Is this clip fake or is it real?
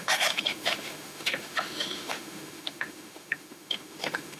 fake